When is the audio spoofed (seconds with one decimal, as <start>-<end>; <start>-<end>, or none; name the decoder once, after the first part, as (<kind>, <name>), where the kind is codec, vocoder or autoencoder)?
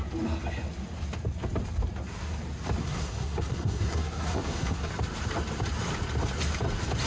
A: 2.8-4.9 (codec, SNAC)